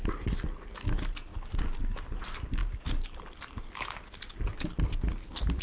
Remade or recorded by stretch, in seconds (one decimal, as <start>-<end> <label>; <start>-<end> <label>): 0.0-5.6 recorded